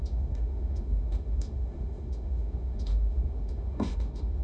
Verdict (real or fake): fake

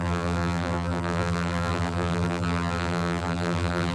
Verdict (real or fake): fake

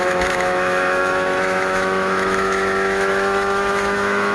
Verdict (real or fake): fake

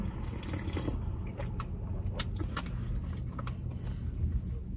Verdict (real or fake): real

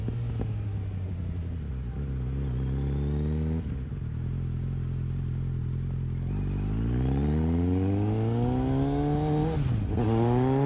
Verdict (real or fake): real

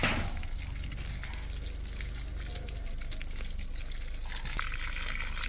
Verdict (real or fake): real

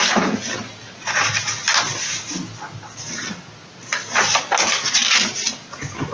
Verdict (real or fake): real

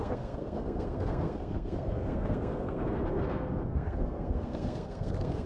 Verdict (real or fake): fake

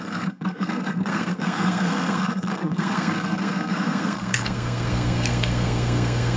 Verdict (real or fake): fake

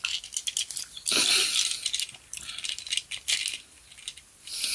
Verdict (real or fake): real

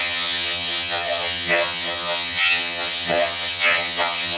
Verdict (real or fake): fake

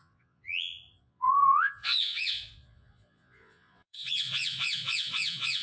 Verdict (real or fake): fake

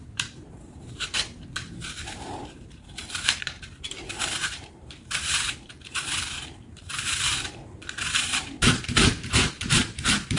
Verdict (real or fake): fake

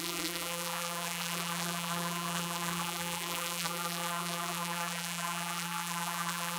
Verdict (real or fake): fake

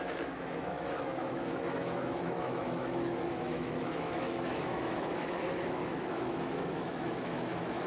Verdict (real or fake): fake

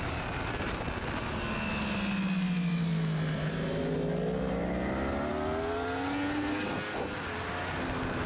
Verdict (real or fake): real